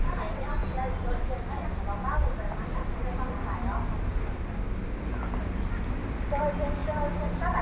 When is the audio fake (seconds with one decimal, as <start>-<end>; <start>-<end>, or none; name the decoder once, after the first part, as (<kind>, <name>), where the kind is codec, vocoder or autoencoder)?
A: none